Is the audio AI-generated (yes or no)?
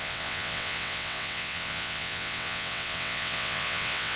yes